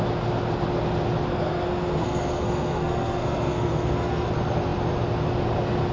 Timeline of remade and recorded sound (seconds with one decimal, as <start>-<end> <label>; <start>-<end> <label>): 0.0-1.3 recorded; 1.3-4.3 remade; 4.3-5.9 recorded